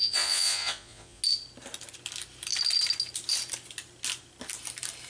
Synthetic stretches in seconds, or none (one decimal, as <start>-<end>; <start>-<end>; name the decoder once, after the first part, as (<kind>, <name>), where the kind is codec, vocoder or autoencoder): 0.0-1.2 (vocoder, Vocos)